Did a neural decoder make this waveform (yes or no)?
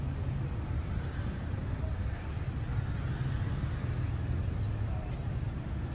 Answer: no